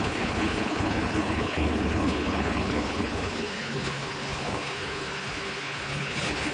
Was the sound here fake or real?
fake